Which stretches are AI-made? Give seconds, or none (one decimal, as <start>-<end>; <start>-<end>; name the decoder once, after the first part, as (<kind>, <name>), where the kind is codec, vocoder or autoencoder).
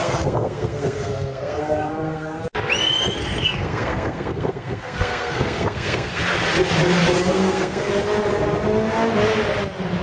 0.0-2.4 (codec, SNAC); 3.2-6.2; 7.3-7.9